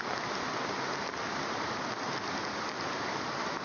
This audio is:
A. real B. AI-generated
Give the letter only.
A